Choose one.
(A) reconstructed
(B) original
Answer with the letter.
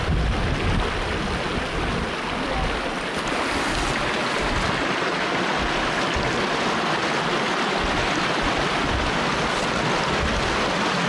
B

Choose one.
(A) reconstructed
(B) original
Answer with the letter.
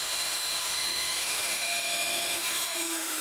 A